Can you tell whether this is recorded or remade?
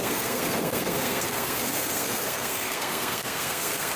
remade